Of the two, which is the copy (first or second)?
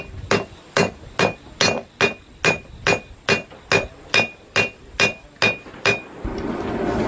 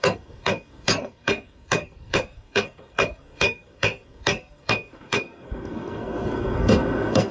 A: second